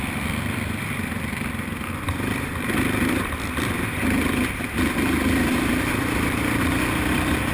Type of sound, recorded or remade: remade